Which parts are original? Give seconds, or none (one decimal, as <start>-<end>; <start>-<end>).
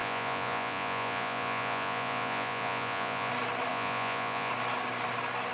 3.3-3.7; 4.5-5.5